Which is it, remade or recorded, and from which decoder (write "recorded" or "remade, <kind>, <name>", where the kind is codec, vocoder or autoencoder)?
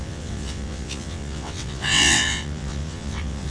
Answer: remade, vocoder, WaveNeXt